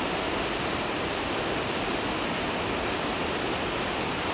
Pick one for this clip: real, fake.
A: real